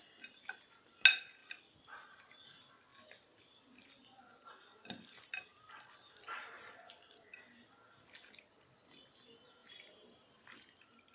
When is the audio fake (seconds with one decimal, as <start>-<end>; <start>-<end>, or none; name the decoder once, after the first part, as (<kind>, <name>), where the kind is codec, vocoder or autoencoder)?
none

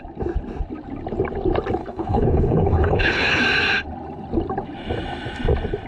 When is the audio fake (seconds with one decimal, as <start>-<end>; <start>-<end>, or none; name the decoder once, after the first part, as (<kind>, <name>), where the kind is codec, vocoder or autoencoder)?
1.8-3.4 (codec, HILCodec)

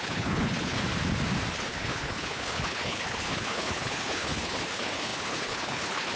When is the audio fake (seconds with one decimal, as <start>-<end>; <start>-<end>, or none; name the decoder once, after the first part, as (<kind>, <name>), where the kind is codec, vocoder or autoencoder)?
0.0-0.8 (codec, HILCodec); 1.5-6.2